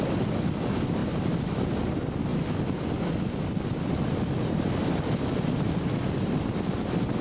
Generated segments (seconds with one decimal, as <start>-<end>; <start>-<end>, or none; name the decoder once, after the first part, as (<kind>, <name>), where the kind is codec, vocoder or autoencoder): 2.3-5.5 (vocoder, BigVGAN v2)